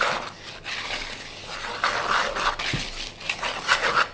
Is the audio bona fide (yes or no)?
yes